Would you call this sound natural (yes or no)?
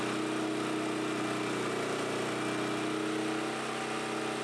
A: yes